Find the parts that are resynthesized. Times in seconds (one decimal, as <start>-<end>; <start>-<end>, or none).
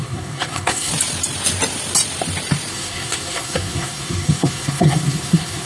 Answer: 0.0-0.9; 2.7-5.7